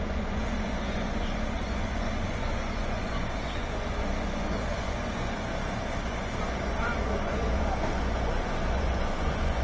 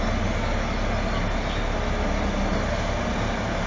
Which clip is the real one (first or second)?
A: second